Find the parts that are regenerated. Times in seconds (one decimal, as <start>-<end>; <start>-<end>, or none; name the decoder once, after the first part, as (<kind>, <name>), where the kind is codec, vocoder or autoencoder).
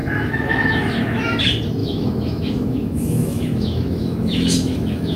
0.0-1.4 (autoencoder, DAC-VAE); 1.8-5.2